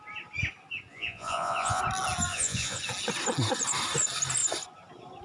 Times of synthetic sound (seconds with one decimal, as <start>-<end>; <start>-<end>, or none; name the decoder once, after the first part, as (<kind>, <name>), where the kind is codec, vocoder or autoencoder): 0.9-1.8 (vocoder, Vocos); 2.3-2.8